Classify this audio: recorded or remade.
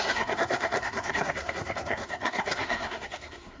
remade